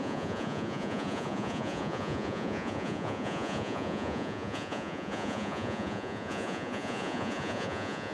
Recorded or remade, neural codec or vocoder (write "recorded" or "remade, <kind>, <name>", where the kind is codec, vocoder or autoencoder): remade, vocoder, Vocos